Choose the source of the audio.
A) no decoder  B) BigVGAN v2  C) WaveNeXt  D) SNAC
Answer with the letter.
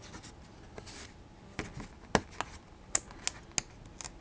A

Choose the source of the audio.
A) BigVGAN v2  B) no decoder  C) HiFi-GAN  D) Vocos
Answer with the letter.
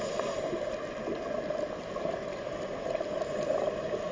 A